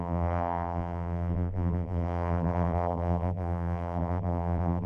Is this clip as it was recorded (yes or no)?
no